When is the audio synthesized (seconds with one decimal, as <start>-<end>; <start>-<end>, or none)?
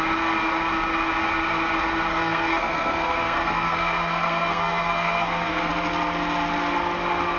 2.1-5.7